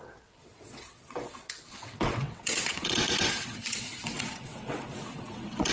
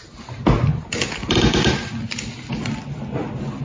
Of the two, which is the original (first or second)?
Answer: second